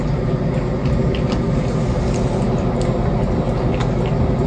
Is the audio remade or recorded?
recorded